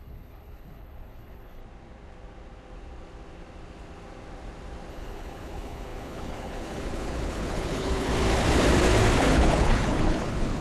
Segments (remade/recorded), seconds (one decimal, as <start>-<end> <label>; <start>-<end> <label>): 0.0-1.6 remade; 1.6-4.9 recorded; 4.9-8.1 remade; 8.1-9.2 recorded; 9.2-10.6 remade